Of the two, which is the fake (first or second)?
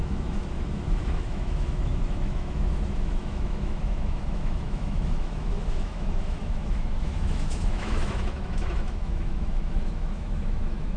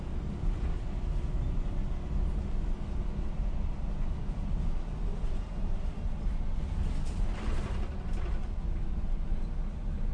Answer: first